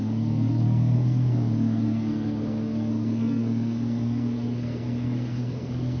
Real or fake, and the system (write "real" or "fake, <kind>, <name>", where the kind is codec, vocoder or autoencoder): fake, codec, SNAC